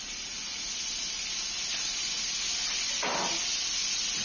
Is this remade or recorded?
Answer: recorded